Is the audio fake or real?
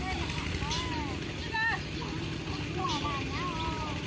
real